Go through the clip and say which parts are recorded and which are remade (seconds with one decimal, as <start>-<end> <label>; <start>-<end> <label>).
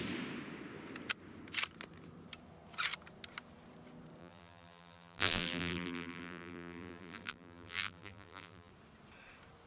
0.0-4.2 recorded; 4.2-8.7 remade; 8.7-9.7 recorded